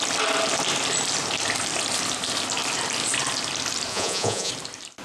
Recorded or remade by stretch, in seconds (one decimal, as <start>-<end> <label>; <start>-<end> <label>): 0.0-3.9 recorded; 3.9-4.5 remade; 4.5-5.0 recorded